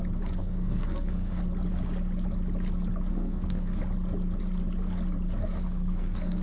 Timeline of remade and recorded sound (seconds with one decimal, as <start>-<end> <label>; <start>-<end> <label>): 0.0-0.4 recorded; 0.4-1.4 remade; 1.4-3.1 recorded; 3.1-3.8 remade; 3.8-5.4 recorded; 5.4-6.4 remade